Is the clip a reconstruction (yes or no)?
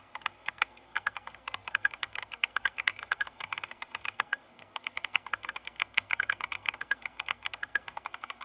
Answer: yes